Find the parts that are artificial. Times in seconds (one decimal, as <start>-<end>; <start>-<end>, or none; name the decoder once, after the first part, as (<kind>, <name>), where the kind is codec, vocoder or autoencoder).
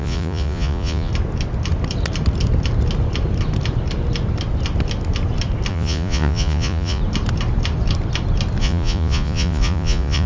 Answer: 0.0-1.1 (vocoder, Vocos); 5.7-7.0; 8.6-10.3